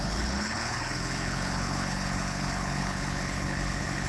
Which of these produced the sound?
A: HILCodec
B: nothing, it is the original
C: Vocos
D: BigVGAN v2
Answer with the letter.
A